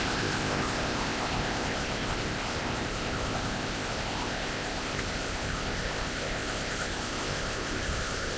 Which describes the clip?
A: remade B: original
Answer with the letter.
A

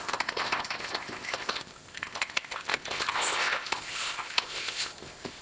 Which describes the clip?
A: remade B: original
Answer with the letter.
A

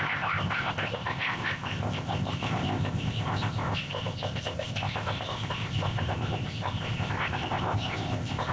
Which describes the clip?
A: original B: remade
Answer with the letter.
B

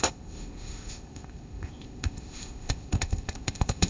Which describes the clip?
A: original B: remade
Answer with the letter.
B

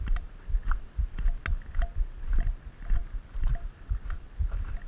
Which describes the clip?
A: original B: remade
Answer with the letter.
A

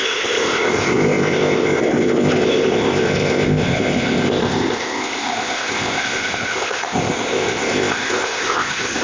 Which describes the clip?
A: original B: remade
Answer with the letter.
B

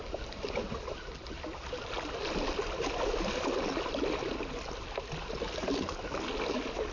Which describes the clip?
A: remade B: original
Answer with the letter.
B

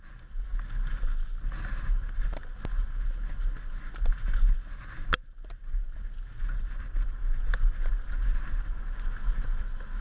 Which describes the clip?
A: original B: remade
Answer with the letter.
A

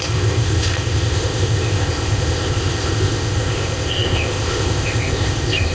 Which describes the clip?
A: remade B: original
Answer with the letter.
A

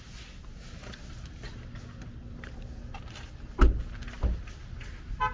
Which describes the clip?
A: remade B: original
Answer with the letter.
B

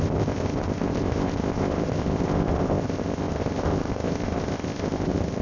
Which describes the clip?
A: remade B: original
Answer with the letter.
A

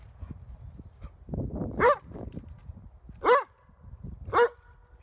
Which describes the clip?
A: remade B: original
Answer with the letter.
B